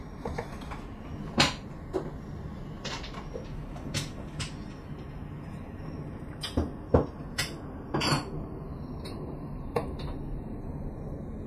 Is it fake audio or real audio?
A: real